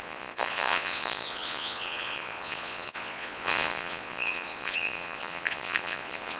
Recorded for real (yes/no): no